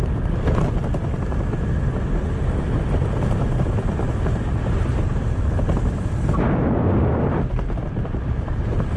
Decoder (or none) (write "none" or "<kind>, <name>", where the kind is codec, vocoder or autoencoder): none